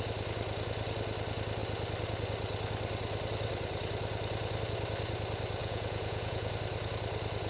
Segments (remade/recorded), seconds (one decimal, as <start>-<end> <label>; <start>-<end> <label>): 0.0-5.6 recorded; 5.6-6.5 remade; 6.5-7.5 recorded